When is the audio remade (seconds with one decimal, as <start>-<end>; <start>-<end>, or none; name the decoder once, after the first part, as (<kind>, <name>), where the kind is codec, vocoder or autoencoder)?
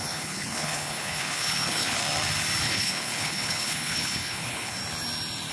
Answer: 0.0-2.0 (codec, HILCodec); 2.6-4.8